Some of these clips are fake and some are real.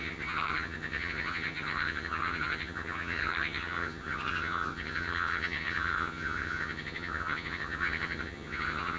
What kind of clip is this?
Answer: fake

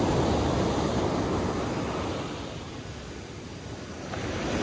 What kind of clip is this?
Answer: real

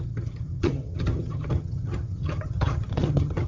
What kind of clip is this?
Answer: fake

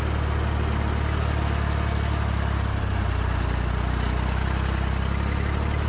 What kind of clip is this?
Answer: real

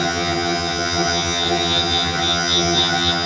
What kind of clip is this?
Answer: fake